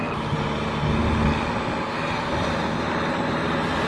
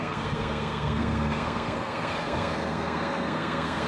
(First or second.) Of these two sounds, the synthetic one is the second